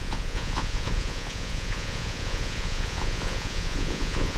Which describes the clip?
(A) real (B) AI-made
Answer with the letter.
B